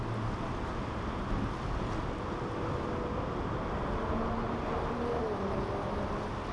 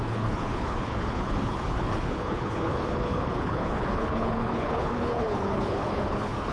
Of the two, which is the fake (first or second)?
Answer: second